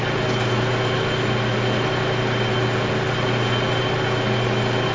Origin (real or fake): real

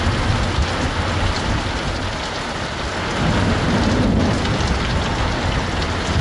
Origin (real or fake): real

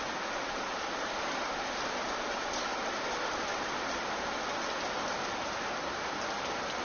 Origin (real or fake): real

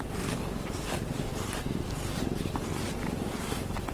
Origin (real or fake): real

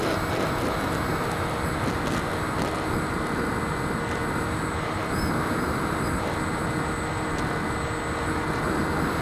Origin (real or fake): real